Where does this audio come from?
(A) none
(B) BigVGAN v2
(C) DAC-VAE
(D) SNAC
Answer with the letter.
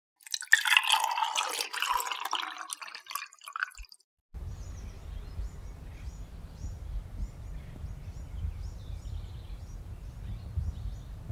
A